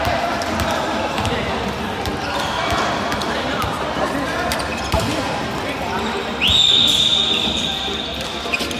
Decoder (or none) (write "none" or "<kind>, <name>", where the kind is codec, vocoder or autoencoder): vocoder, BigVGAN v2